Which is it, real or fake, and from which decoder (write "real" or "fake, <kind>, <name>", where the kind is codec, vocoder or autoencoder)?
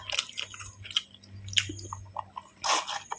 real